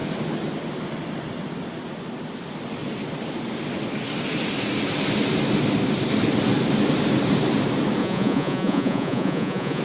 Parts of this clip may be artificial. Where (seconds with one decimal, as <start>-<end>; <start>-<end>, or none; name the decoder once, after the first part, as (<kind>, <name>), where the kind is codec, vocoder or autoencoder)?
8.0-9.8 (vocoder, Vocos)

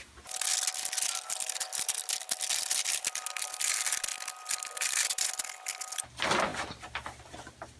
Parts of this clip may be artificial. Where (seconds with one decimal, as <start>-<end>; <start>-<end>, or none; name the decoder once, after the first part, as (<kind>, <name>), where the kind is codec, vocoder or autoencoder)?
none